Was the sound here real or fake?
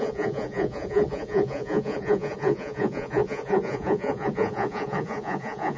fake